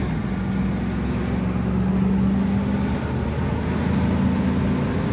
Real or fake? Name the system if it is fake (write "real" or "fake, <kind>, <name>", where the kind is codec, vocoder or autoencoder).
real